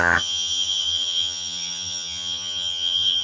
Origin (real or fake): fake